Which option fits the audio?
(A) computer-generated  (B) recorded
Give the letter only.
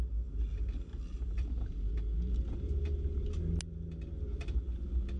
B